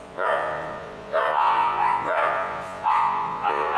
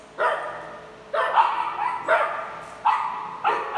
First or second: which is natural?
second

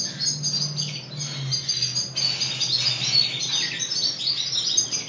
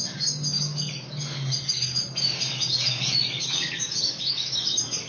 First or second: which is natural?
first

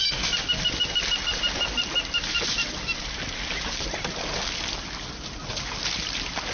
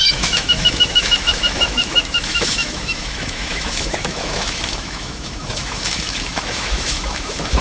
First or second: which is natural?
first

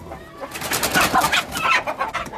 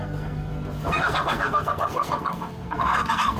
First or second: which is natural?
first